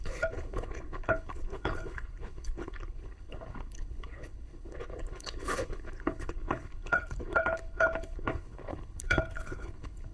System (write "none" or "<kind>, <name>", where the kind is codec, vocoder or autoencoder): codec, HILCodec